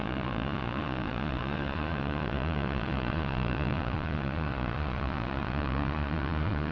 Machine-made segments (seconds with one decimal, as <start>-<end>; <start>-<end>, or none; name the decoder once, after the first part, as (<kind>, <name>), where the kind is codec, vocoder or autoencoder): 0.0-6.7 (vocoder, Vocos)